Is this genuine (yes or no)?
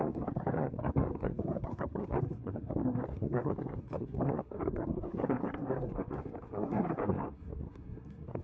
no